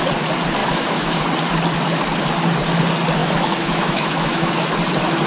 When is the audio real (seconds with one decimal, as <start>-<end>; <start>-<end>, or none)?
0.0-0.6; 1.2-3.2; 4.6-5.3